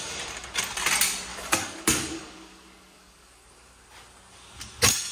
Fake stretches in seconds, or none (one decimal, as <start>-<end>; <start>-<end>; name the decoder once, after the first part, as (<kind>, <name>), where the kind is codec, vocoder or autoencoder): 1.3-3.7 (codec, DAC)